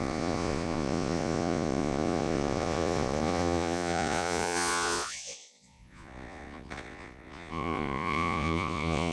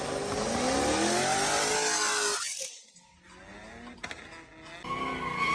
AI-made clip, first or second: first